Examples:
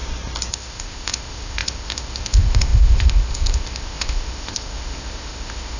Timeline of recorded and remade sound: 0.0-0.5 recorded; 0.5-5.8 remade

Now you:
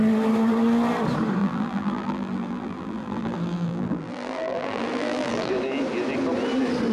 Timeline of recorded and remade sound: 0.0-1.4 recorded; 1.4-5.5 remade; 5.5-6.9 recorded